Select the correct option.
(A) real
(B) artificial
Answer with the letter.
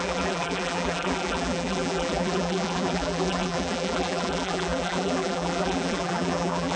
B